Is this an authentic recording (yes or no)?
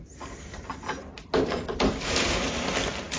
yes